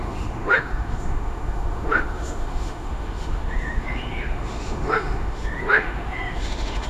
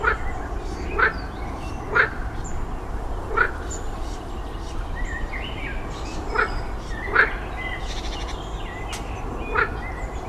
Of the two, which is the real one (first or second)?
second